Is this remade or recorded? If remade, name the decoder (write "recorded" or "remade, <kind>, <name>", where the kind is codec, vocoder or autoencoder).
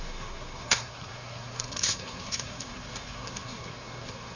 remade, codec, SNAC